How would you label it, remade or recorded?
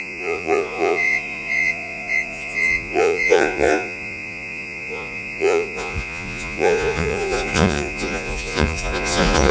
remade